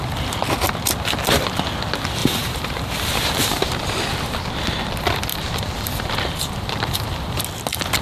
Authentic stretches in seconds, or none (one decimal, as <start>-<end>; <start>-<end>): 0.0-2.2; 3.9-5.3; 7.4-8.0

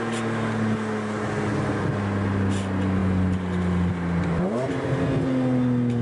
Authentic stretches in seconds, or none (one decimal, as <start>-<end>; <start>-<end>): 0.0-6.0

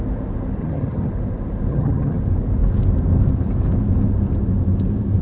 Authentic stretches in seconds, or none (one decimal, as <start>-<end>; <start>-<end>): 0.0-0.6; 1.1-1.7; 2.2-5.2

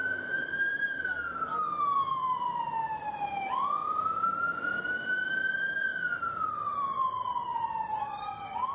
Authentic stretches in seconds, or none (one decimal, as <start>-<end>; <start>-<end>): 0.0-8.7

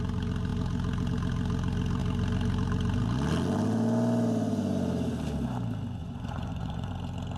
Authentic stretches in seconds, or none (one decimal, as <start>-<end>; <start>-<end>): 0.0-6.0; 6.9-7.4